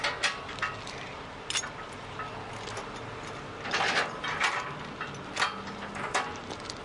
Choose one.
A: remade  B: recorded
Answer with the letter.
B